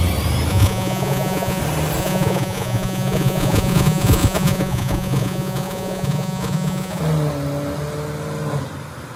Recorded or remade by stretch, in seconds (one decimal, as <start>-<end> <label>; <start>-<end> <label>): 0.0-0.5 recorded; 0.5-1.6 remade; 1.6-2.0 recorded; 2.0-7.0 remade; 7.0-9.2 recorded

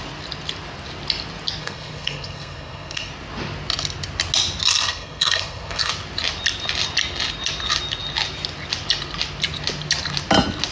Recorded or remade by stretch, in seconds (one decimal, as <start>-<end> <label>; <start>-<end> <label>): 0.0-1.6 recorded; 1.6-3.1 remade; 3.1-4.7 recorded; 4.7-5.9 remade; 5.9-10.7 recorded

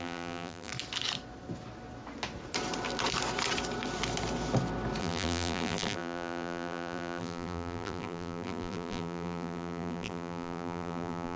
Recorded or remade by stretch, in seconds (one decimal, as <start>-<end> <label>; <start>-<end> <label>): 0.0-0.7 remade; 0.7-5.0 recorded; 5.0-11.4 remade

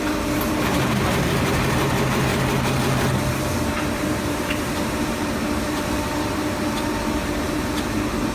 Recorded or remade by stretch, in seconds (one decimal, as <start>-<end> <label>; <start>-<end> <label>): 0.0-2.3 remade; 2.3-3.6 recorded; 3.6-8.3 remade

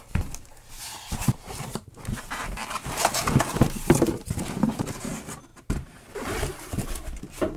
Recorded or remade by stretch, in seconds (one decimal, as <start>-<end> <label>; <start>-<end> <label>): 0.0-0.5 recorded; 0.5-5.1 remade; 5.1-5.5 recorded; 5.5-7.6 remade